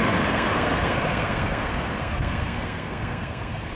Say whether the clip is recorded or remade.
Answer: remade